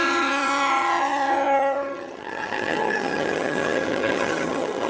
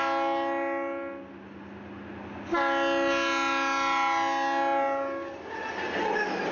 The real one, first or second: second